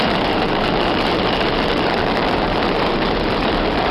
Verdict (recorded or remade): remade